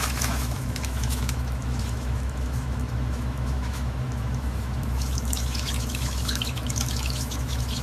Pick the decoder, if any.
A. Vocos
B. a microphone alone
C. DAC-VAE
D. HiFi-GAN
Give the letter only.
C